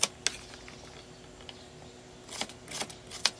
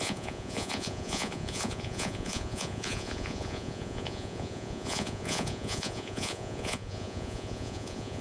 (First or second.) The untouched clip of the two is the first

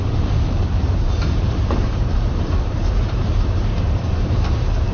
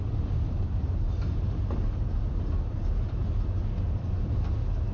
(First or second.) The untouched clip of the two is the second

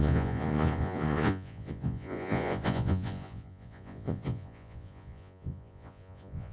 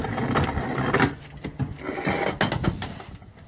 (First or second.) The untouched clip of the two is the second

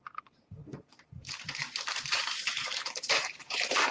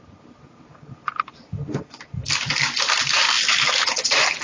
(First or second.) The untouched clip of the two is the second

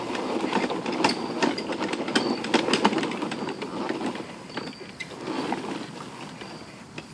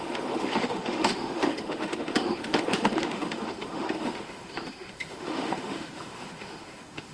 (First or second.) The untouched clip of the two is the first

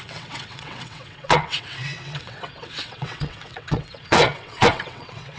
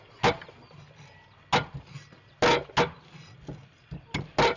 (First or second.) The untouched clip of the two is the second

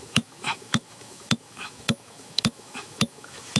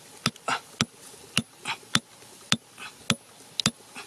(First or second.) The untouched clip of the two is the second